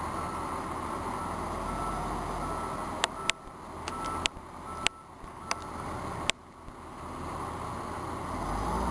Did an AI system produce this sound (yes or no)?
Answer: no